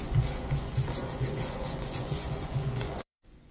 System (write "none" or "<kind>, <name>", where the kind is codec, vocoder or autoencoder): vocoder, Vocos